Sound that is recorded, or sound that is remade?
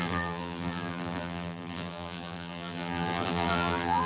remade